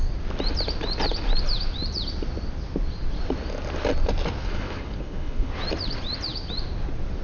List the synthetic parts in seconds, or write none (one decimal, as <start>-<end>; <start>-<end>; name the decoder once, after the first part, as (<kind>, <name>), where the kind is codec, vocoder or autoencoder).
4.4-5.5 (codec, HILCodec)